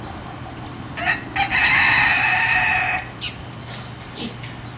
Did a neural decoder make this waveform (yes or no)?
no